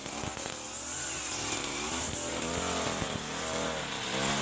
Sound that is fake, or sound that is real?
real